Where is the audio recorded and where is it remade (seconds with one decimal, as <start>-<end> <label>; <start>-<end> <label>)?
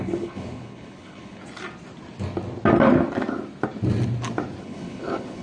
0.0-1.4 remade; 1.4-4.6 recorded; 4.6-5.4 remade